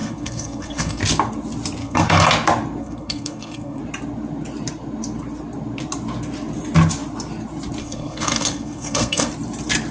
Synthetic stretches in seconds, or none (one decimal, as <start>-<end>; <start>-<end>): 0.0-1.0; 1.8-2.3; 2.8-3.8; 7.8-9.3